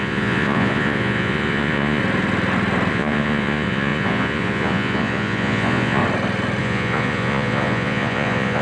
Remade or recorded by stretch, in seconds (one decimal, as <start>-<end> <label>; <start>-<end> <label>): 0.0-2.0 remade; 2.0-2.9 recorded; 2.9-6.0 remade; 6.0-6.6 recorded; 6.6-8.6 remade